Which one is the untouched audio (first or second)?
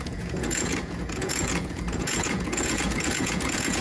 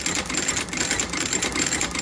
second